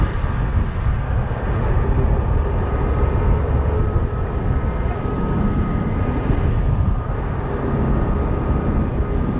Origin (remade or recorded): recorded